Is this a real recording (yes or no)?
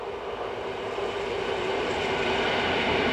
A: yes